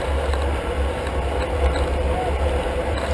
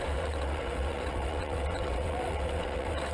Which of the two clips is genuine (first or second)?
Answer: first